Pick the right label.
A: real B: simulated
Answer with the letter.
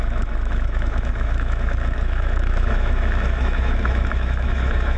B